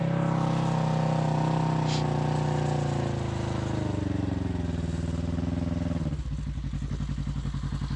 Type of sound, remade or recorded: recorded